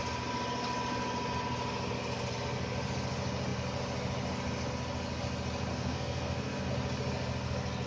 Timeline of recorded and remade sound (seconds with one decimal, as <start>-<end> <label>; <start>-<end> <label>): 0.0-5.7 recorded; 5.7-6.7 remade; 6.7-7.9 recorded